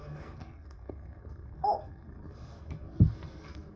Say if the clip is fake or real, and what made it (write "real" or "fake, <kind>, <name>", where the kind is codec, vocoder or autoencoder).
fake, codec, SNAC